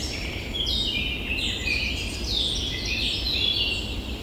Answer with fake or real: real